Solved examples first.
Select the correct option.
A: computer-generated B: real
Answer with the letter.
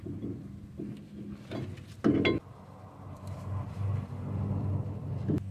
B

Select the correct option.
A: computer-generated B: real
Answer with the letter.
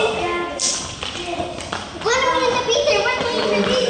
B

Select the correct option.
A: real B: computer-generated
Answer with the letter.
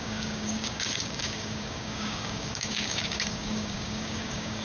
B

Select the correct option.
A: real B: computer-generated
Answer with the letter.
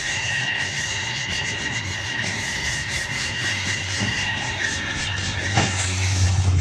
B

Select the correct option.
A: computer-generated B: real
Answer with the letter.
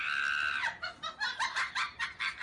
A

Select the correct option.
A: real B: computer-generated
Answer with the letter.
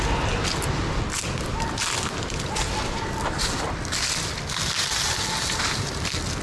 A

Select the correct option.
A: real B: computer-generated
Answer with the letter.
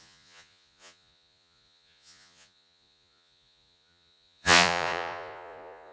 B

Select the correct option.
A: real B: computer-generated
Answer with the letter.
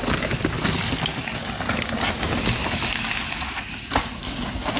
A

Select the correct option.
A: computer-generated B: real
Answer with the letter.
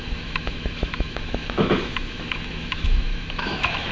A